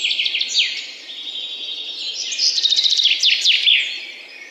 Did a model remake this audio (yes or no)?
no